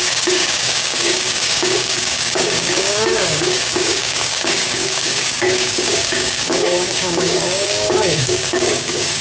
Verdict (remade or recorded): remade